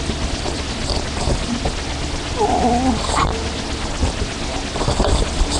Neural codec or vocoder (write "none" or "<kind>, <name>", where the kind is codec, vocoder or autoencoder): none